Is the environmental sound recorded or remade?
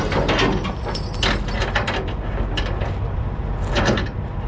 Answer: recorded